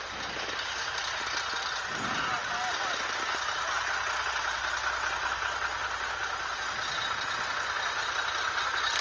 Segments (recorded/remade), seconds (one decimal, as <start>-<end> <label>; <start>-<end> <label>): 0.0-9.0 recorded